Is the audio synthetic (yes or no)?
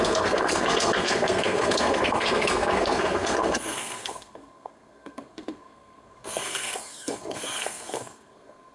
yes